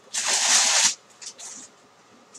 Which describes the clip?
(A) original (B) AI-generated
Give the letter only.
A